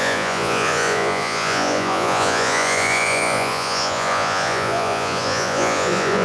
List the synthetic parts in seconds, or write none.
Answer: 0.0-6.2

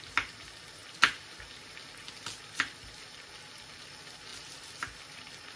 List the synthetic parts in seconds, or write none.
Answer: none

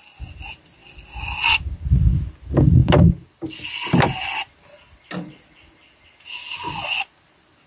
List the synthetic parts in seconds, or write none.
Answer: none

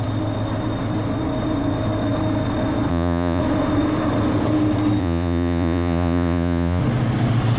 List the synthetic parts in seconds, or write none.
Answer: 2.9-3.4; 5.0-6.8

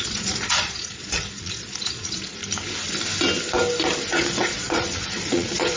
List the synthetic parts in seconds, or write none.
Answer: 0.0-2.4; 4.1-5.8

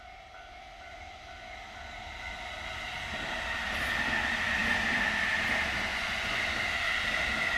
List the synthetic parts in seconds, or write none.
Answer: 5.9-6.5

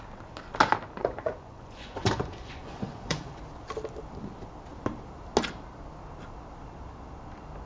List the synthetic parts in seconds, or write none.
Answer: 1.0-3.4

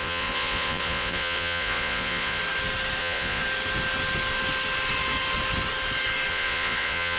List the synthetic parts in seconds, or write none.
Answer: 0.0-2.4; 3.0-3.4; 6.3-7.2